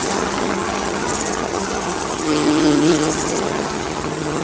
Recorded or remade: remade